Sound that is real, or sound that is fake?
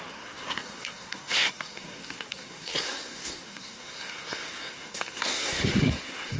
fake